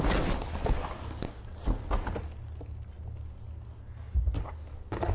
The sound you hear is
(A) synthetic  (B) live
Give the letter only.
B